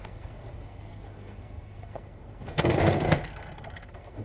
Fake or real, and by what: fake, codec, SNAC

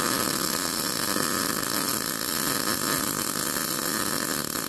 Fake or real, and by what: real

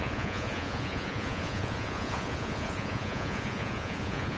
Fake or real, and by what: fake, vocoder, Vocos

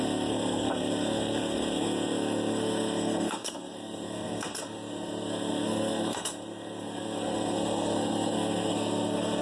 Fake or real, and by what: fake, codec, SNAC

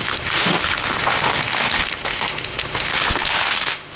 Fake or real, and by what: fake, autoencoder, DAC-VAE